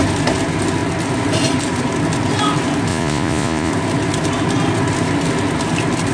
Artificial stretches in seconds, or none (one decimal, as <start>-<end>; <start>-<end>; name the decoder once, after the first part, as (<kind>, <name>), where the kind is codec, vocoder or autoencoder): 2.9-3.7 (vocoder, Vocos)